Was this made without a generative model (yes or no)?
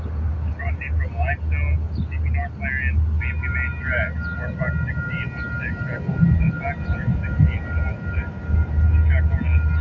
yes